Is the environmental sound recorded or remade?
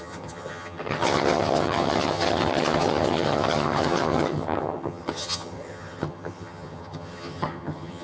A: remade